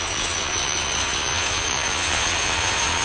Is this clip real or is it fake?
fake